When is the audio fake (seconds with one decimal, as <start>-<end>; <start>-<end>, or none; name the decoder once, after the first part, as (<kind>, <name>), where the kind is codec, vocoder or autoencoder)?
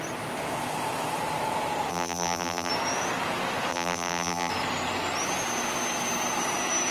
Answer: 1.9-2.7 (vocoder, BigVGAN v2); 3.7-4.5